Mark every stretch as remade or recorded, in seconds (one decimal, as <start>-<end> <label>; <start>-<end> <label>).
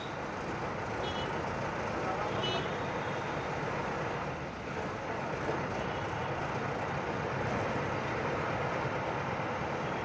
0.0-10.0 recorded